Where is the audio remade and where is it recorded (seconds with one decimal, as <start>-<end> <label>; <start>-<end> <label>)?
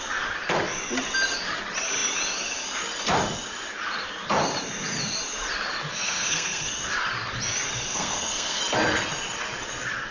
0.0-5.9 recorded; 5.9-6.7 remade; 6.7-7.9 recorded; 7.9-8.6 remade; 8.6-10.1 recorded